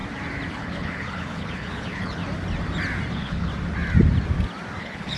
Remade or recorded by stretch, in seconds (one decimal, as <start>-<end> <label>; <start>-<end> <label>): 0.0-0.5 recorded; 0.5-2.2 remade; 2.2-3.1 recorded; 3.1-3.5 remade; 3.5-4.8 recorded; 4.8-5.2 remade